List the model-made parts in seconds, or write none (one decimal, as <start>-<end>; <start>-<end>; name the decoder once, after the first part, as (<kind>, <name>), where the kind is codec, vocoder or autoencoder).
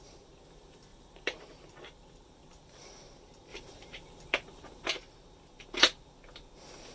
0.9-2.9 (vocoder, BigVGAN v2); 3.5-4.9